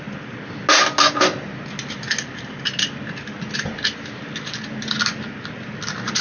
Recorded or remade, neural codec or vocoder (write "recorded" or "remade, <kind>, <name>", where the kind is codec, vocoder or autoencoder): recorded